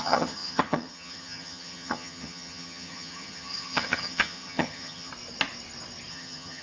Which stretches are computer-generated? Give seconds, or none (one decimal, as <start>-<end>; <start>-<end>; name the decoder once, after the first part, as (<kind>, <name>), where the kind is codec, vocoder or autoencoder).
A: 0.0-5.1 (vocoder, HiFi-GAN); 6.1-6.6